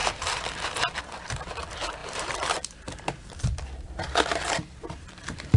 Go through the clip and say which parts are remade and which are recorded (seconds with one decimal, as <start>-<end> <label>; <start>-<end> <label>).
0.0-1.0 remade; 1.0-2.0 recorded; 2.0-5.6 remade